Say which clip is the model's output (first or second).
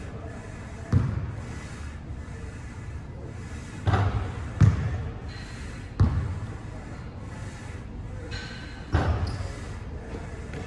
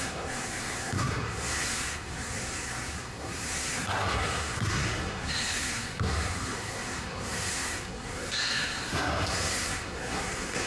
second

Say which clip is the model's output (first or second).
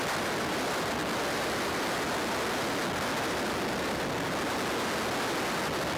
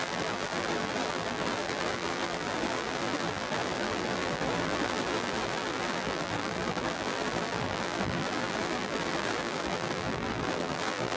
second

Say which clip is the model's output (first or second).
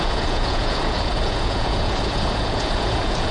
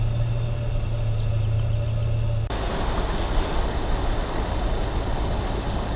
first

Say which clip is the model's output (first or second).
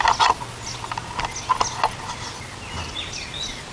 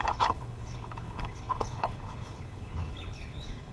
second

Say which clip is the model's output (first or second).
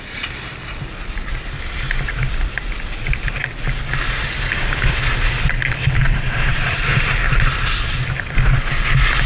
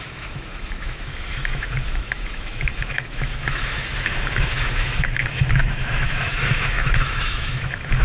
second